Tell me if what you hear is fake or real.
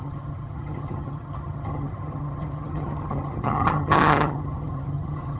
fake